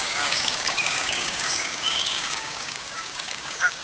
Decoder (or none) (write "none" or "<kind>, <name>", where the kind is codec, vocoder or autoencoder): codec, DAC